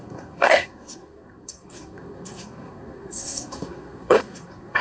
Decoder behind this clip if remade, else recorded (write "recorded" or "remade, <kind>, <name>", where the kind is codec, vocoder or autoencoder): remade, codec, SNAC